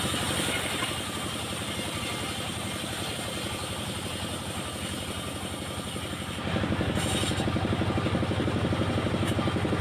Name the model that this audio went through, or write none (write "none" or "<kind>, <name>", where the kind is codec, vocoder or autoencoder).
none